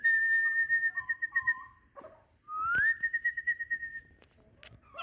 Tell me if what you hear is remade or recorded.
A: recorded